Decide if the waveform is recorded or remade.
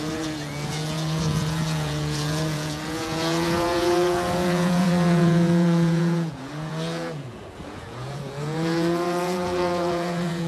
remade